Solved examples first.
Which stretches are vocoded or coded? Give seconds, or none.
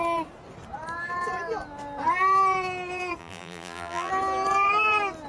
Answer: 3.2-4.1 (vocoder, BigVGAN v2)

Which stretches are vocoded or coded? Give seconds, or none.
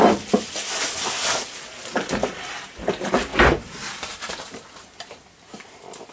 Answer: 3.3-5.2 (vocoder, BigVGAN v2)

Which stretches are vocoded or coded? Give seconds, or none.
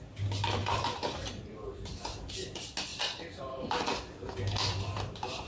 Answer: 0.6-2.3 (vocoder, BigVGAN v2)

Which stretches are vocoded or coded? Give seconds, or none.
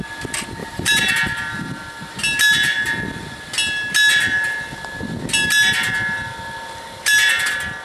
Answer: 0.6-1.1 (vocoder, BigVGAN v2)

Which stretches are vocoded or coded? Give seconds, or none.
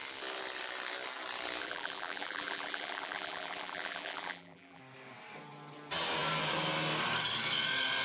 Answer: 1.6-4.8 (vocoder, BigVGAN v2)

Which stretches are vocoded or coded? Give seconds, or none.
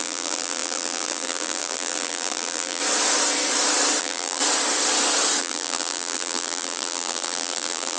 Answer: 0.0-2.8 (vocoder, BigVGAN v2); 4.0-4.4; 5.4-8.0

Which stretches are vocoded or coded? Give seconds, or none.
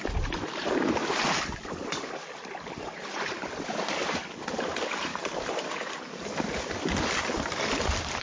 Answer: 5.1-7.0 (vocoder, BigVGAN v2)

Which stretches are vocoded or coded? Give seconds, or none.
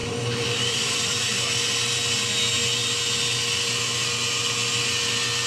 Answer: 0.0-1.2 (vocoder, BigVGAN v2)